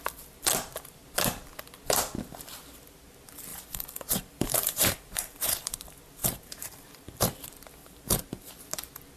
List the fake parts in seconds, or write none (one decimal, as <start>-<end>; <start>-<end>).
3.5-5.4; 6.2-7.2; 7.8-8.5